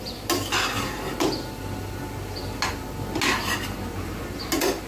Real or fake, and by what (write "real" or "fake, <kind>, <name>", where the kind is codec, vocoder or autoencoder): real